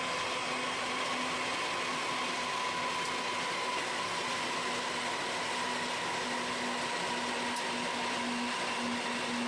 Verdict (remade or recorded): recorded